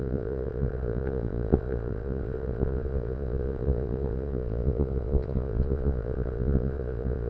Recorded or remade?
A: remade